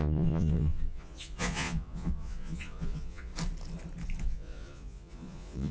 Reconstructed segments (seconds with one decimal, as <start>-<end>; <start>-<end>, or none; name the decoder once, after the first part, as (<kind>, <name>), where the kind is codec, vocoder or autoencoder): 0.0-3.3 (vocoder, Vocos); 4.2-5.7